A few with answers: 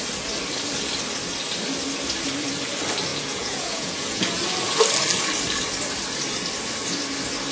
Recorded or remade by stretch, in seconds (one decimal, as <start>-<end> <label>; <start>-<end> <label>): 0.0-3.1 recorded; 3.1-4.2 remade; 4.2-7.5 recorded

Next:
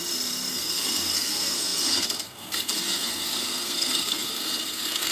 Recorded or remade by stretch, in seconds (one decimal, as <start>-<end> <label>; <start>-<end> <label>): 0.0-0.5 recorded; 0.5-5.1 remade

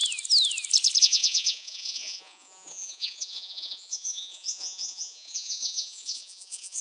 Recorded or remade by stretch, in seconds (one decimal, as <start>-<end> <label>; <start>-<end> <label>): 0.0-1.0 recorded; 1.0-6.8 remade

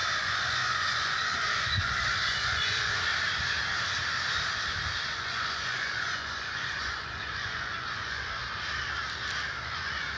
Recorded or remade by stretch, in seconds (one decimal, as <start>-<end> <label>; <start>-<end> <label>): 0.0-3.1 remade; 3.1-5.1 recorded; 5.1-8.4 remade; 8.4-9.6 recorded; 9.6-10.2 remade

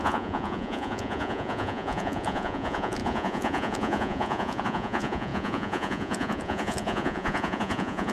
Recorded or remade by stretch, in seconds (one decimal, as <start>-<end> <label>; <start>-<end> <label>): 0.0-8.1 remade

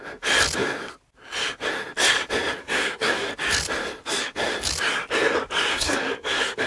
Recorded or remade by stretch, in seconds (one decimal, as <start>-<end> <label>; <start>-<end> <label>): 0.0-2.6 recorded; 2.6-3.3 remade; 3.3-5.7 recorded; 5.7-6.7 remade